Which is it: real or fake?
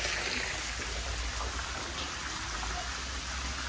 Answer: real